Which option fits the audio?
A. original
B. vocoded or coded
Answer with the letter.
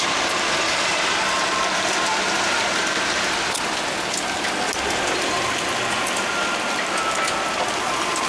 A